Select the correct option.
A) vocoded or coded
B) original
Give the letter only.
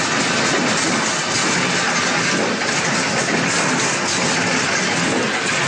B